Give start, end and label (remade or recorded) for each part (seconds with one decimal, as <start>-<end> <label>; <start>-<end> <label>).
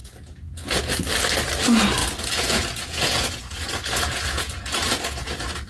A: 0.0-0.8 remade; 0.8-2.0 recorded; 2.0-5.7 remade